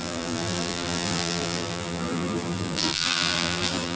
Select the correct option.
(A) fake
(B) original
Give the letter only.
A